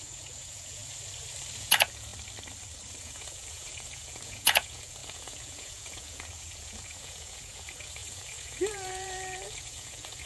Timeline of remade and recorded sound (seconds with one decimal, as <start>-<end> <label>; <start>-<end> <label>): 0.0-0.8 remade; 0.8-1.6 recorded; 1.6-2.1 remade; 2.1-3.0 recorded; 3.0-10.3 remade